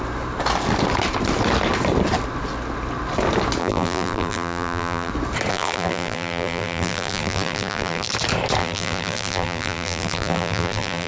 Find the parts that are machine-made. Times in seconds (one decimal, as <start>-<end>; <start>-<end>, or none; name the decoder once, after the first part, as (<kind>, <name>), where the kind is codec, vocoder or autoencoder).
3.6-5.1 (vocoder, BigVGAN v2); 5.5-8.1; 8.6-11.1